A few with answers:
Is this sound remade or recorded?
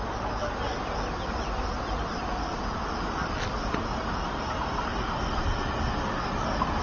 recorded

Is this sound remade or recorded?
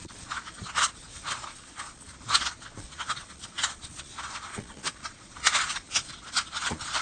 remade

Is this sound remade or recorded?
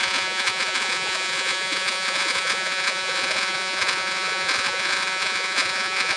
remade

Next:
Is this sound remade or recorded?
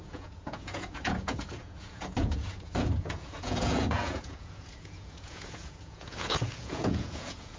remade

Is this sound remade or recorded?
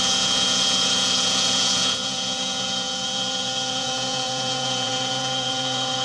remade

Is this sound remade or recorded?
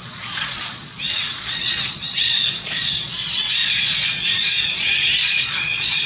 remade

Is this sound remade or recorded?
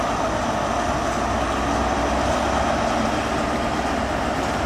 recorded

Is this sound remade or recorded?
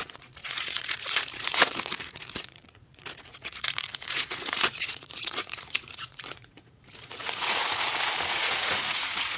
remade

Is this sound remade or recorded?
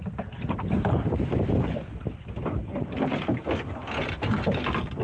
recorded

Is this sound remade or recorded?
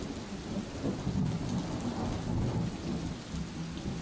recorded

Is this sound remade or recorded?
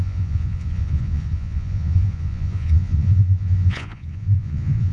remade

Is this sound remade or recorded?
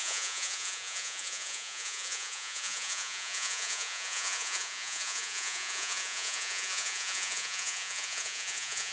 remade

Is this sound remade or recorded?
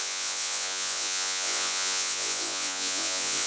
remade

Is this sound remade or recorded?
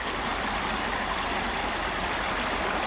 recorded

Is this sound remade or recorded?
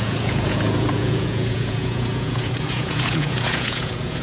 remade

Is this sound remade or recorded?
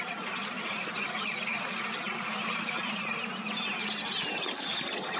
recorded